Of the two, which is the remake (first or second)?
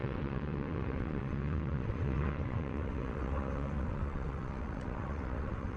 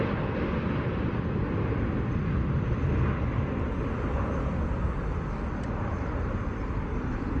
first